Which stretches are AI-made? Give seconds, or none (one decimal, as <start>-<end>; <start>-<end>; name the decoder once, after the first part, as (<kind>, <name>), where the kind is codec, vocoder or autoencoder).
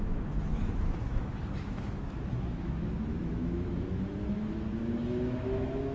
0.0-5.9 (autoencoder, DAC-VAE)